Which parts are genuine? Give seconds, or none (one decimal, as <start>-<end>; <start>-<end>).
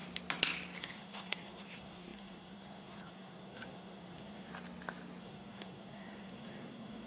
0.0-0.8; 4.5-5.2